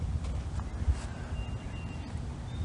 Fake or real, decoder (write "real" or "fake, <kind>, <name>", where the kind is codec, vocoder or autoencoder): real